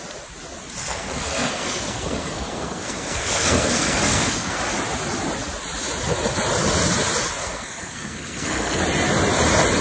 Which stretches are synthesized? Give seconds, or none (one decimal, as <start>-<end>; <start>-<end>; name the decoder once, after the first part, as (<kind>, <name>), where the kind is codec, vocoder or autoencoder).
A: 0.8-4.6 (codec, SNAC); 7.4-8.8